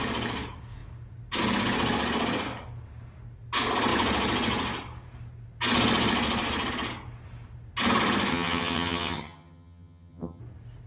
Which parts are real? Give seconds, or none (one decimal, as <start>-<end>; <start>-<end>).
0.0-8.3; 10.4-10.9